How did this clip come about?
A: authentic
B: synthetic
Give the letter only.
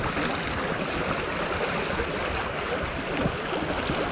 A